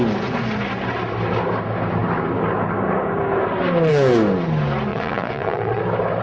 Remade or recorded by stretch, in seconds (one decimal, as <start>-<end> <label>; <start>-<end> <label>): 0.0-4.9 recorded; 4.9-5.8 remade; 5.8-6.2 recorded